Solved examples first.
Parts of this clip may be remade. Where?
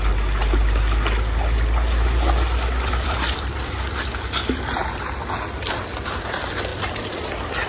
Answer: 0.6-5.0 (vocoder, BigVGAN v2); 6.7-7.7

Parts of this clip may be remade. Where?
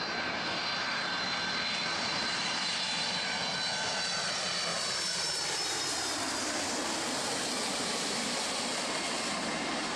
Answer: 1.9-3.1 (vocoder, BigVGAN v2); 4.7-5.6; 7.7-8.7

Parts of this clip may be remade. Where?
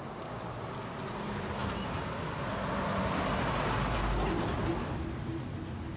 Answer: none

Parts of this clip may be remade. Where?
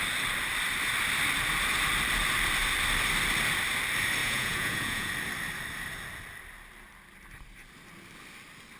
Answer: 4.2-5.1 (vocoder, Vocos)